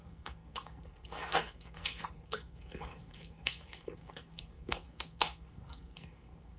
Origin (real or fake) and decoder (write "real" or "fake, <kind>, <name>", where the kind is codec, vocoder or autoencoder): fake, codec, SNAC